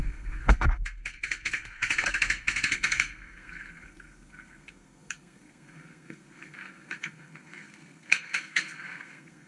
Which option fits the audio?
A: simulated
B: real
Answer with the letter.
A